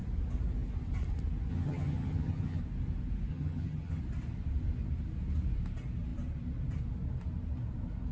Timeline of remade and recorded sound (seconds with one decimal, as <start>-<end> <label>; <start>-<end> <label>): 0.0-1.5 recorded; 1.5-2.6 remade; 2.6-3.3 recorded; 3.3-4.0 remade; 4.0-8.1 recorded